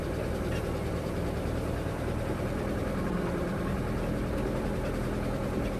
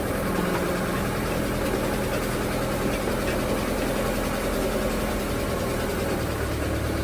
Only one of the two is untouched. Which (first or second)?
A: second